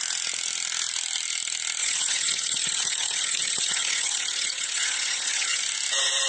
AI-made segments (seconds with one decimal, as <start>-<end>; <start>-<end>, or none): 1.8-5.6